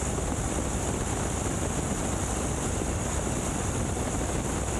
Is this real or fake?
real